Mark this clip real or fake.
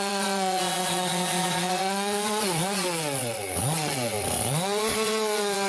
fake